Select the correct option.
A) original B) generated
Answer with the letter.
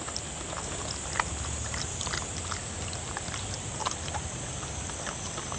A